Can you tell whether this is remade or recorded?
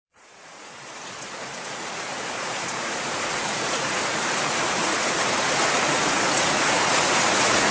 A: remade